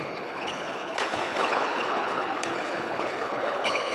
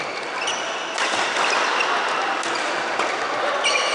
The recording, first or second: second